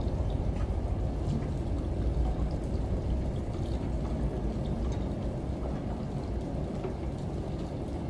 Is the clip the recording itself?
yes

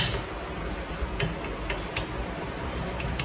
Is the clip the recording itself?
yes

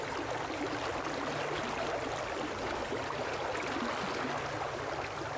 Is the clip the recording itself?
yes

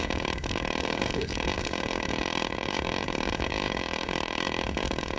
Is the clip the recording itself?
no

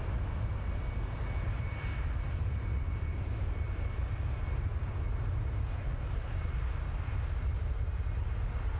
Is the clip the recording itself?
yes